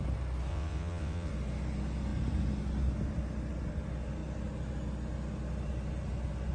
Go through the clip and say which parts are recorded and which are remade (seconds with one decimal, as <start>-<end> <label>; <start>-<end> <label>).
0.0-0.5 recorded; 0.5-1.3 remade; 1.3-6.5 recorded